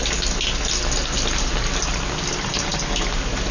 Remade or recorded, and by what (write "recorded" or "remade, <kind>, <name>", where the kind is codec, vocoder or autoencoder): recorded